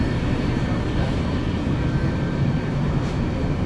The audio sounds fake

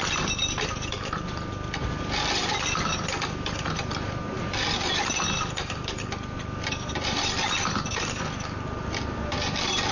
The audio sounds fake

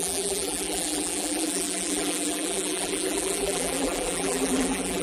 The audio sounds fake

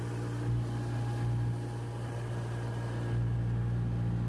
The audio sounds real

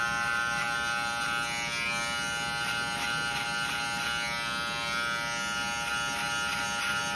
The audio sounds real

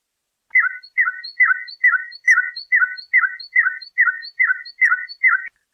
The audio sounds real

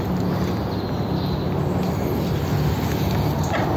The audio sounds real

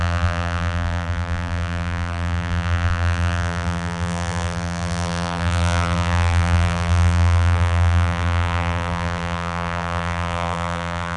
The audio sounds fake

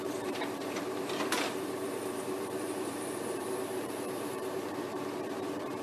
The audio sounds fake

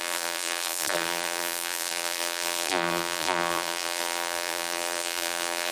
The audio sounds fake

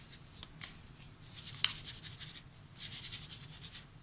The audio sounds real